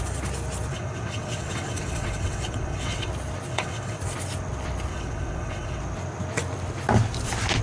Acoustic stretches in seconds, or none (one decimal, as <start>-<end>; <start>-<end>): 0.0-0.7; 3.1-3.5; 4.0-4.9; 5.8-7.6